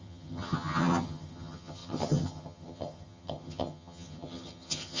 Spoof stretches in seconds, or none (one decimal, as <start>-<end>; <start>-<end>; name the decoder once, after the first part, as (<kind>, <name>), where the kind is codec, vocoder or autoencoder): 0.0-5.0 (vocoder, HiFi-GAN)